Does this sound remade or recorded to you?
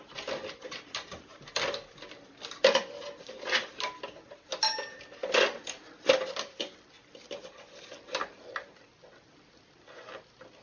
recorded